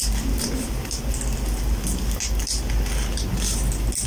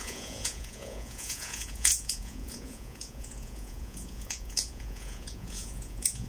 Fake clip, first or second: second